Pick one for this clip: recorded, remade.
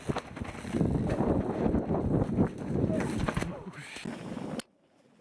recorded